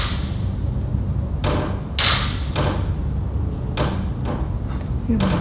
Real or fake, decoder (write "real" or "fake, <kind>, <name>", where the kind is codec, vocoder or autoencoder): real